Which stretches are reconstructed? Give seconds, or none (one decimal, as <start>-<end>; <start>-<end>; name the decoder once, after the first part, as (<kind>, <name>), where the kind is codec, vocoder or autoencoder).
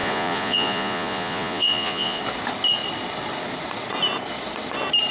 0.0-2.2 (vocoder, Vocos)